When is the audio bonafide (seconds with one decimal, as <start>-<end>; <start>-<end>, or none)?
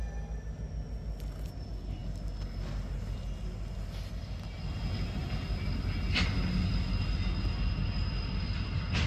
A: 0.0-9.1